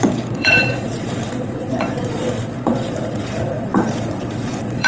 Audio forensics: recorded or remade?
remade